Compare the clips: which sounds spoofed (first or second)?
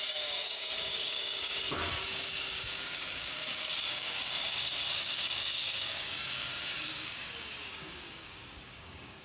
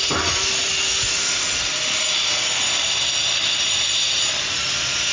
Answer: first